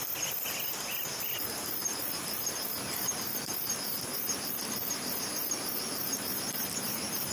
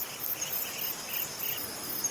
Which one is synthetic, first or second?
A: first